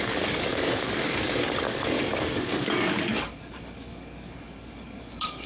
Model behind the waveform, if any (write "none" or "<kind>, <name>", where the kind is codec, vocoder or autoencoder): codec, DAC